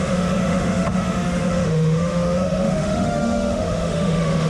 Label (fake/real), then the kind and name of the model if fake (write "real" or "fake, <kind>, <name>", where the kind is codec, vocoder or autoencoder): fake, autoencoder, DAC-VAE